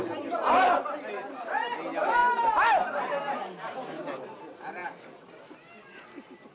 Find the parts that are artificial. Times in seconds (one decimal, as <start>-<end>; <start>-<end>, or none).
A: none